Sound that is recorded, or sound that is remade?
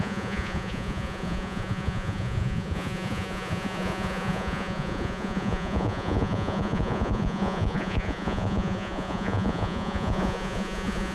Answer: remade